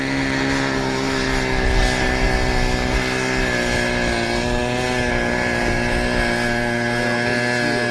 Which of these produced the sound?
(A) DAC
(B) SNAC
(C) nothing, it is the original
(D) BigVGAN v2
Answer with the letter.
C